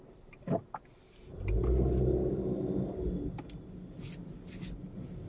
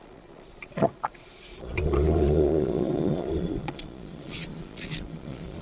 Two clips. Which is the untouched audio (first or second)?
first